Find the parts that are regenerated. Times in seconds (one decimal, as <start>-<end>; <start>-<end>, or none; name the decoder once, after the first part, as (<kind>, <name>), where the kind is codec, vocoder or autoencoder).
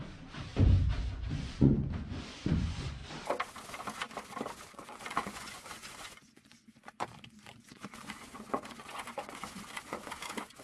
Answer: 0.0-0.5 (vocoder, Vocos); 1.3-3.0; 4.7-10.6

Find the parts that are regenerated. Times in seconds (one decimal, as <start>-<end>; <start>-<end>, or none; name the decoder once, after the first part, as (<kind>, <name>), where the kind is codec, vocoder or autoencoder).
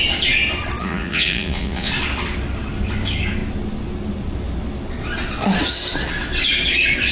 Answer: 0.8-1.9 (vocoder, Vocos)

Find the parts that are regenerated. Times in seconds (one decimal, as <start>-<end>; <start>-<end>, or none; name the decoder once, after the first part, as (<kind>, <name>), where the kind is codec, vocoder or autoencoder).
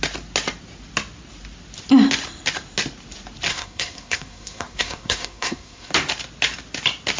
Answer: 3.5-5.9 (codec, SNAC)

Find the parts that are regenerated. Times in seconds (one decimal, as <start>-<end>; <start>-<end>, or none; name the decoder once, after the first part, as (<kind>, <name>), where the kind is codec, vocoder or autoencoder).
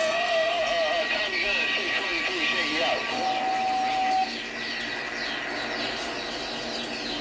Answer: 0.0-0.6 (codec, SNAC)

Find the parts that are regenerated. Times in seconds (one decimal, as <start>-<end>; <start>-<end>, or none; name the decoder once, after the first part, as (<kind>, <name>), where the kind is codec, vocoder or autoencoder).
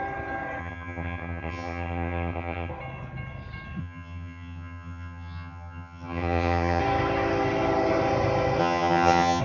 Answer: 0.6-2.7 (vocoder, HiFi-GAN); 3.8-6.8; 8.6-9.4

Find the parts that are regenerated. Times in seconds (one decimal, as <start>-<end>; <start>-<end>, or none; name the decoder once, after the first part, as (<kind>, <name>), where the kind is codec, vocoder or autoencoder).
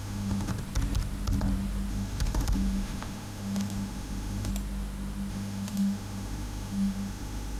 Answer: 0.0-0.5 (autoencoder, DAC-VAE); 1.9-4.5; 5.3-7.6